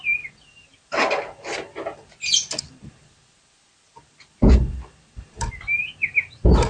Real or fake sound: real